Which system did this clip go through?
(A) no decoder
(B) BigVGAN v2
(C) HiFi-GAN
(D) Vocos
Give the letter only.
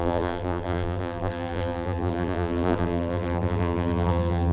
B